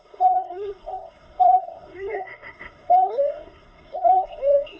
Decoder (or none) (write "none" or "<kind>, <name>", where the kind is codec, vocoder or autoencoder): codec, SNAC